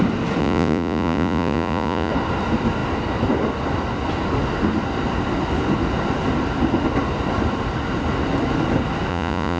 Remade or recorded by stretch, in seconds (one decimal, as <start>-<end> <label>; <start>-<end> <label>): 0.0-0.4 recorded; 0.4-2.1 remade; 2.1-9.1 recorded; 9.1-9.6 remade